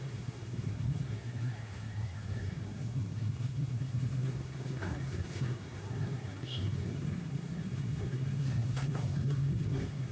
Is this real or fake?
fake